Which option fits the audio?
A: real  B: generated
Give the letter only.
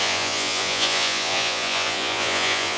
B